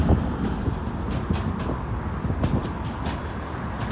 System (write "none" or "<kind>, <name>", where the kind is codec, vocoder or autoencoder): none